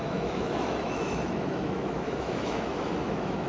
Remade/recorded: remade